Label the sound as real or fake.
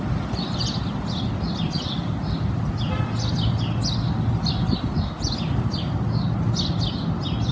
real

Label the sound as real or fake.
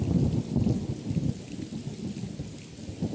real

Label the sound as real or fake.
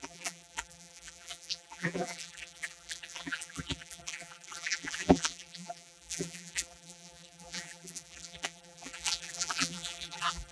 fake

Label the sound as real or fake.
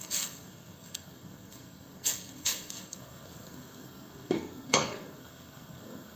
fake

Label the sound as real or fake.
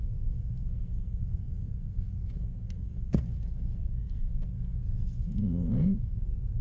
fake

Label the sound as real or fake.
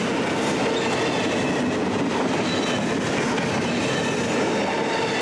real